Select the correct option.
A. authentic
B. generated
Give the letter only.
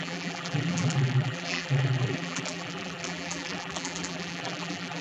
B